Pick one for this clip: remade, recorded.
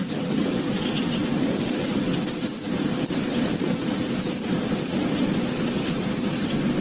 recorded